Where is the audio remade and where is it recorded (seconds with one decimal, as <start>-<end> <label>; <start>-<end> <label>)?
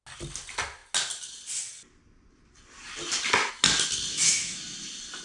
0.0-4.1 recorded; 4.1-4.6 remade; 4.6-5.2 recorded